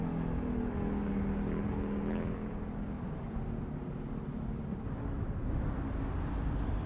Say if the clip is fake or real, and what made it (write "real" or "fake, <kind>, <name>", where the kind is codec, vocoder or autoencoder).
real